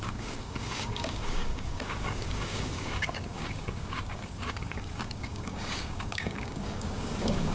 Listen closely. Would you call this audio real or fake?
fake